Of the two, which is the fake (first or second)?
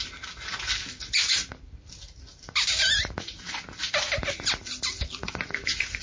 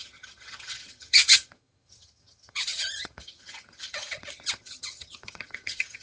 second